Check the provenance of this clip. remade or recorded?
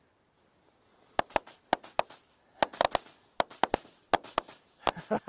recorded